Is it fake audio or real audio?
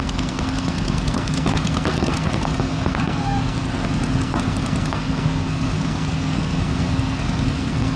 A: fake